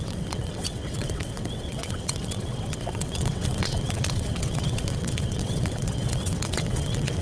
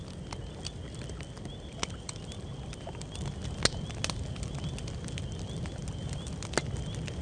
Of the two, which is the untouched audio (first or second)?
second